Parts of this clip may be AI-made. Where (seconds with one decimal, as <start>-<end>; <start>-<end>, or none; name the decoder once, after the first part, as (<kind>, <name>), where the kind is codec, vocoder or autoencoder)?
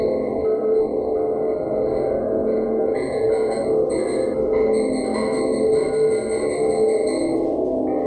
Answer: 2.4-3.6 (vocoder, Vocos)